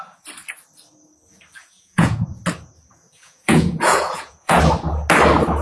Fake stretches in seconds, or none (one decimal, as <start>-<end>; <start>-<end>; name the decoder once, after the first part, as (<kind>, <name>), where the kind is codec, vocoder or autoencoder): 1.6-2.4 (vocoder, Vocos); 2.9-4.6